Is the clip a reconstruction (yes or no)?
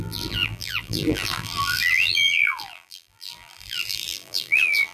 yes